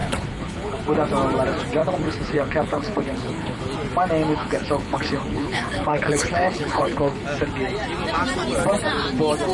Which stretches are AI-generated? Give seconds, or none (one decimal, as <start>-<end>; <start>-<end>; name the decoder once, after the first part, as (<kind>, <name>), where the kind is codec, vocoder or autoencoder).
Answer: 0.0-0.8 (codec, HILCodec); 1.8-3.6; 4.3-7.2